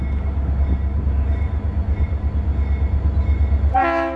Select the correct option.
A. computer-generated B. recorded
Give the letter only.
B